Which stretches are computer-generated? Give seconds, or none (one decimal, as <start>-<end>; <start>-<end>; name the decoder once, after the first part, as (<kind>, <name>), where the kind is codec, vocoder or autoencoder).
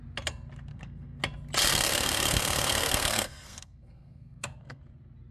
0.7-1.2 (codec, SNAC); 1.7-4.8